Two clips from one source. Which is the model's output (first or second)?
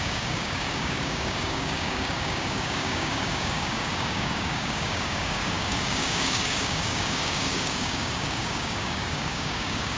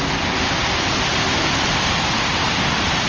first